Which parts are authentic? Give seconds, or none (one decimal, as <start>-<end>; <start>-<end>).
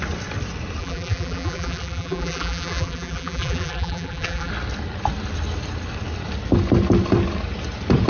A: 0.0-0.8; 4.5-8.1